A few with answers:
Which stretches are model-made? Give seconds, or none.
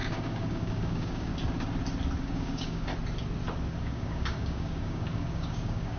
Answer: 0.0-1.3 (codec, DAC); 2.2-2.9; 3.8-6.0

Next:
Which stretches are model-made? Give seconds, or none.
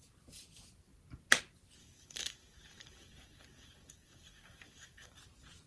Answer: 1.8-5.2 (codec, DAC)